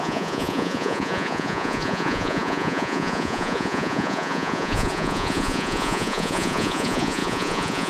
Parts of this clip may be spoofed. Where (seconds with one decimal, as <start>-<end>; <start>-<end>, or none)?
0.0-7.9